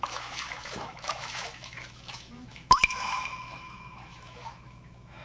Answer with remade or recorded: remade